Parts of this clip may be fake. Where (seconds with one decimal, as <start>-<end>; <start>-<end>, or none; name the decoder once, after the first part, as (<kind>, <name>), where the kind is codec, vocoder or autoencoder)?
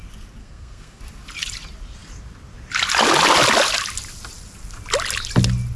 0.4-1.0 (codec, SNAC)